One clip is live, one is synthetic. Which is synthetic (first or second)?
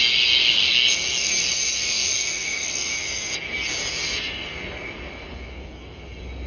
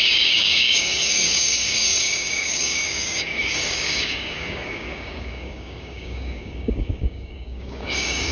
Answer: second